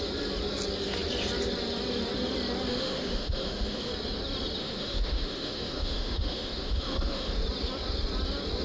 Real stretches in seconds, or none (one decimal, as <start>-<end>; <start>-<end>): 0.0-2.7; 3.9-4.6; 7.4-8.6